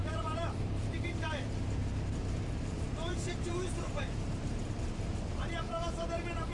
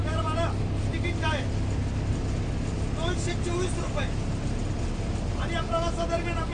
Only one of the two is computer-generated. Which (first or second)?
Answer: first